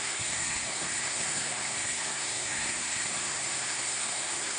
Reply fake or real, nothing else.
fake